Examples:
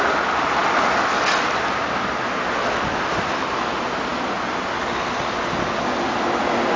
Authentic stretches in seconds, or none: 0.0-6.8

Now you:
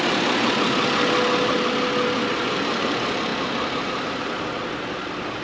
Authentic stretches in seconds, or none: 0.0-5.4

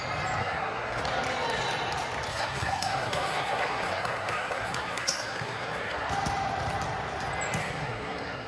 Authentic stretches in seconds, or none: 0.0-0.4; 1.0-2.3; 6.1-7.6

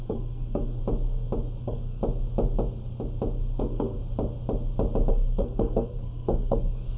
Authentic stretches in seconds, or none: 0.8-1.6; 2.0-3.6; 4.0-5.1

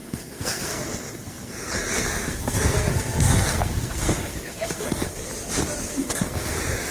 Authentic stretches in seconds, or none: 5.3-5.8

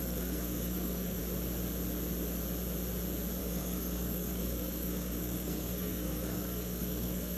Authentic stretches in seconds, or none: 1.2-3.4